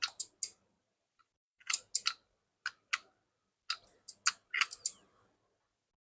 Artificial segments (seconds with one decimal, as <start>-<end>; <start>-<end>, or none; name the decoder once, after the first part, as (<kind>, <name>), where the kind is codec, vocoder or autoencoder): 0.5-1.8 (vocoder, BigVGAN v2)